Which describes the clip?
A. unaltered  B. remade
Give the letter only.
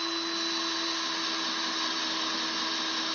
A